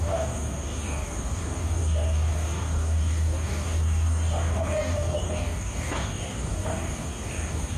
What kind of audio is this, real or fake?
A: fake